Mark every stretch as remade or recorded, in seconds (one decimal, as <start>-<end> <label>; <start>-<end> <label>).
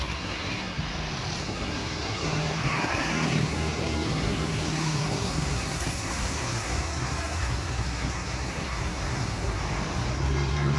0.0-0.8 remade; 0.8-1.4 recorded; 1.4-9.6 remade; 9.6-10.1 recorded; 10.1-10.8 remade